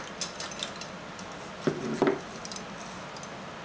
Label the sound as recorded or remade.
recorded